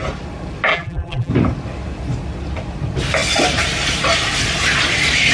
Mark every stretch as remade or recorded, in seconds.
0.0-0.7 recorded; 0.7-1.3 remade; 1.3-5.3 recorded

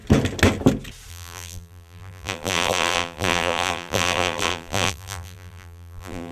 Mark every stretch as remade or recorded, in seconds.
0.0-1.1 recorded; 1.1-6.3 remade